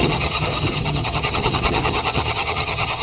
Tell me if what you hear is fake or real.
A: fake